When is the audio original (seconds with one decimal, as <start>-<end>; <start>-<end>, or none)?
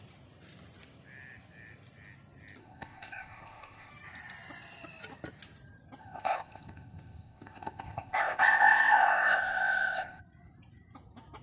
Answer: 0.0-2.6; 3.9-6.0; 10.2-11.4